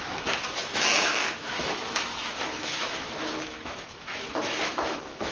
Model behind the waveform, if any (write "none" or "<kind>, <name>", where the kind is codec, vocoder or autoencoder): autoencoder, DAC-VAE